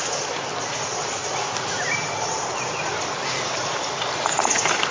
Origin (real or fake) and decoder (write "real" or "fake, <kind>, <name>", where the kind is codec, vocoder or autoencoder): real